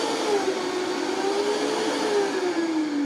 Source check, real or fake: real